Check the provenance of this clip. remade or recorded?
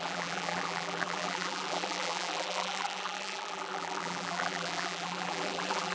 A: remade